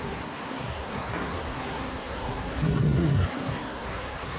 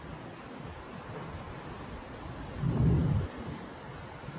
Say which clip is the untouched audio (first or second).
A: second